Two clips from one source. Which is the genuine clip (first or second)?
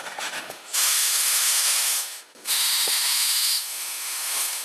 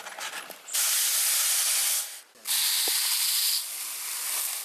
second